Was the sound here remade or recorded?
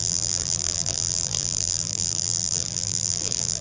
remade